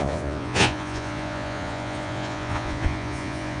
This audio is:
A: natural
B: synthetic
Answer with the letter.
B